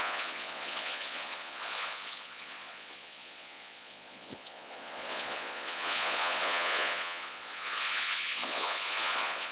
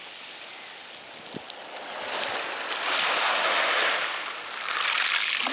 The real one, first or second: second